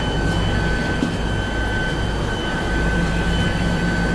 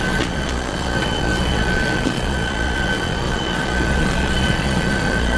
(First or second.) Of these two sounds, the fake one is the second